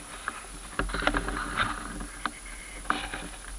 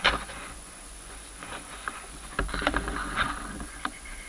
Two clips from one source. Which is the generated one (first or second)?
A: second